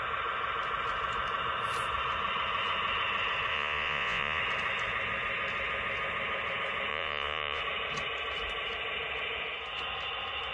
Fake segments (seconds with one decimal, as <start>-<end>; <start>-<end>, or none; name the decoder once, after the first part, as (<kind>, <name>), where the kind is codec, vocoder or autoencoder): 3.5-4.4 (vocoder, Vocos); 6.9-7.6